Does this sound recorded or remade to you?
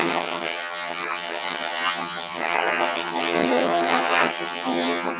remade